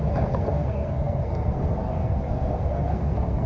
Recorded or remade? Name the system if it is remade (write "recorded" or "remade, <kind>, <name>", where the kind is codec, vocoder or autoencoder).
remade, codec, SNAC